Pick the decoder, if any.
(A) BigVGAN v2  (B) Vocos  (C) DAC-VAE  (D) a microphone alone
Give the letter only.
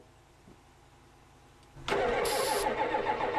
D